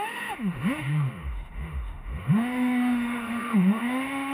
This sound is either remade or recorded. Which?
remade